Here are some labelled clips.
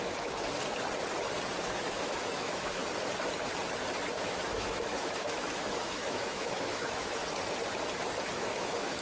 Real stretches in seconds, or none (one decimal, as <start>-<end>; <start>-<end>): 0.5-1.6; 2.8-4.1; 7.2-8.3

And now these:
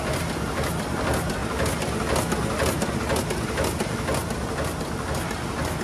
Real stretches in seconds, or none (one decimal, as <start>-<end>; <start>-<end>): 0.0-5.8

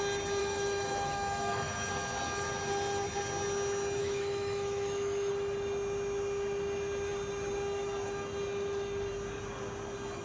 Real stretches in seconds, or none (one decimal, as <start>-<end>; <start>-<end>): 0.0-0.4; 1.9-4.0; 5.3-10.2

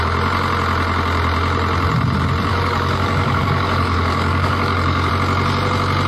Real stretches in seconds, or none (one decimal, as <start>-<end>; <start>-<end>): 0.0-2.5; 5.1-6.1

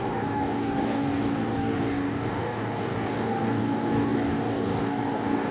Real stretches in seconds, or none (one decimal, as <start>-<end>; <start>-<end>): none

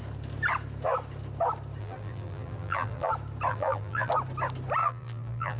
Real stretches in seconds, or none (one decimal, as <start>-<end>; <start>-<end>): 0.0-1.8; 3.1-3.5; 4.1-4.8